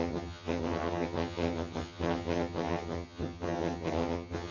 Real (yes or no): no